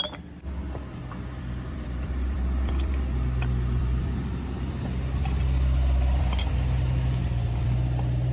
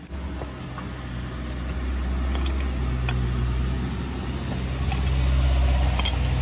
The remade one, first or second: first